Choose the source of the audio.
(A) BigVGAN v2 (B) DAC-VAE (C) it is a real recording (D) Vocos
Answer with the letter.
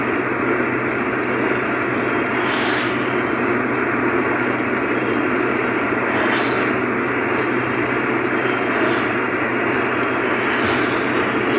C